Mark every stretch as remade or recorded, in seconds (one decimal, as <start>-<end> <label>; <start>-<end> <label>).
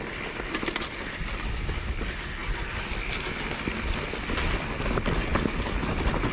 0.0-6.3 recorded